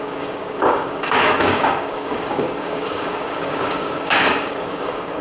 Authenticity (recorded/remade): remade